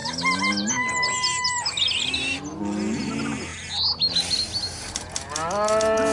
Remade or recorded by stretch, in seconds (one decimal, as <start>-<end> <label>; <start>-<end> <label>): 0.0-6.1 recorded